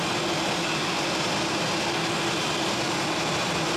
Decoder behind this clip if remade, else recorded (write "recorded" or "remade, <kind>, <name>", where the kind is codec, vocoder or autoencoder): recorded